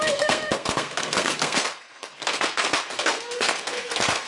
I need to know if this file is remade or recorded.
remade